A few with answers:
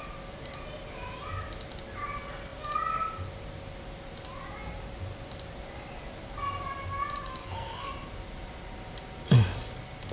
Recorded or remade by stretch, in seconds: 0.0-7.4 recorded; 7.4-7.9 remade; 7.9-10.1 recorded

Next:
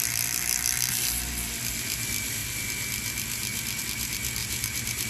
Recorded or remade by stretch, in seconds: 0.0-4.4 recorded; 4.4-5.1 remade